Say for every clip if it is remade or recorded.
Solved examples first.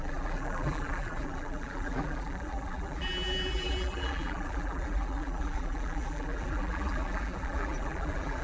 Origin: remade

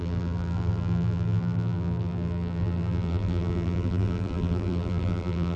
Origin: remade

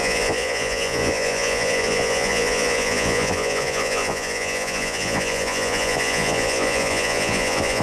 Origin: remade